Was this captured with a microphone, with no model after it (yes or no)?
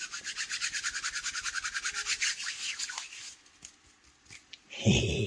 yes